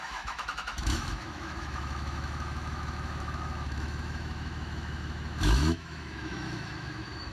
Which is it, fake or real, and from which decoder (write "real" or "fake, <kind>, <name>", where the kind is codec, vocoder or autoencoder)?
fake, autoencoder, DAC-VAE